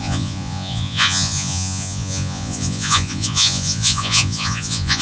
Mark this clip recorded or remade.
remade